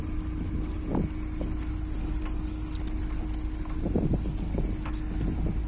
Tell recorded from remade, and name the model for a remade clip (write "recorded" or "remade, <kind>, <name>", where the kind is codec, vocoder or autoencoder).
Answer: recorded